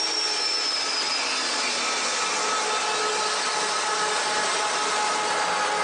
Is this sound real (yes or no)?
yes